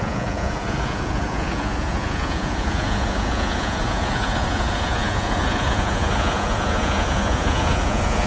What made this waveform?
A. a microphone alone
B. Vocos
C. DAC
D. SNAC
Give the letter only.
B